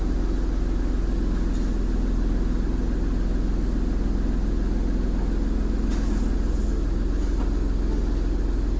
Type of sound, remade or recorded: recorded